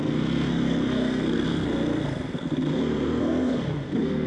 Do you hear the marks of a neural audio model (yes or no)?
yes